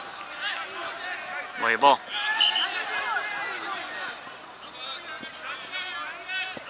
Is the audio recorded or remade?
recorded